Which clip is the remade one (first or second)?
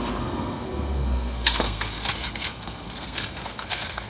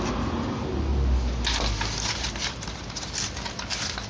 first